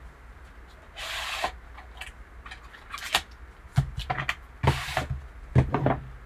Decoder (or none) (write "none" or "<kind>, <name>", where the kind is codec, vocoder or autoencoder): none